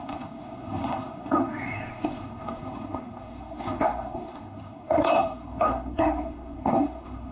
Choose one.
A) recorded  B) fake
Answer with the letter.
B